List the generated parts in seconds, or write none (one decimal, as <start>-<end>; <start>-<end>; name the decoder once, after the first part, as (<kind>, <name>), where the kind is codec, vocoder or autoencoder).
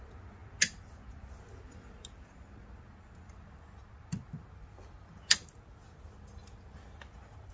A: none